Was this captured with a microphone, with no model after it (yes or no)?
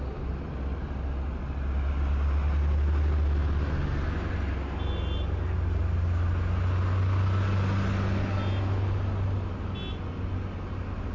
yes